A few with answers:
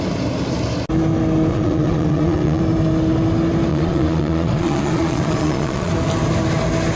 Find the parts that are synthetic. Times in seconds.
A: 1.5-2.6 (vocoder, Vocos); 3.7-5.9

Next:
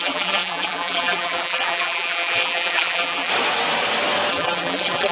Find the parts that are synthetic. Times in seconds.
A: 0.0-3.3 (vocoder, BigVGAN v2); 4.3-5.1

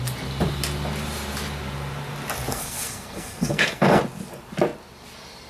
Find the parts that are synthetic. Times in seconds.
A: 2.5-4.0 (codec, SNAC)

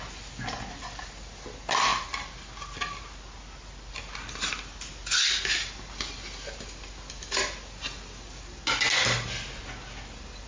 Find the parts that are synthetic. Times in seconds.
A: none

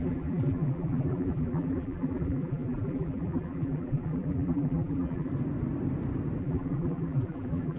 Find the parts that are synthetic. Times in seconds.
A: 0.0-5.3 (vocoder, BigVGAN v2); 6.4-7.8

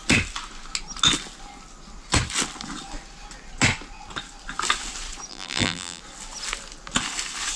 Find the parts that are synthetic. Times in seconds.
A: 5.3-6.0 (vocoder, BigVGAN v2)